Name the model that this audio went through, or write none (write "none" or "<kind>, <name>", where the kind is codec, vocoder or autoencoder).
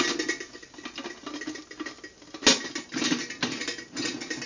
none